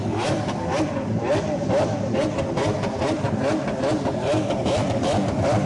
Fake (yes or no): yes